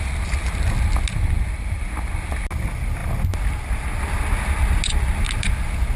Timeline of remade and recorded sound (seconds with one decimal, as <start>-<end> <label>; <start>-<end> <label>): 0.0-6.0 recorded